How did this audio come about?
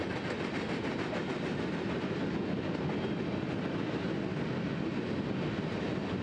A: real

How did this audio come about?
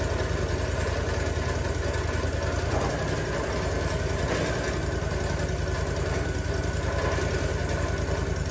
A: real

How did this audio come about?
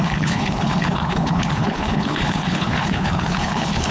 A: fake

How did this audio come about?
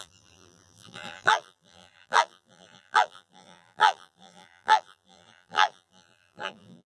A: fake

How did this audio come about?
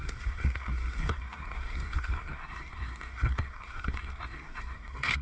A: fake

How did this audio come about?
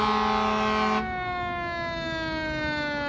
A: real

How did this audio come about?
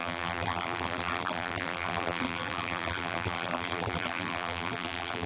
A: fake